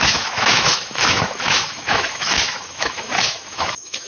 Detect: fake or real fake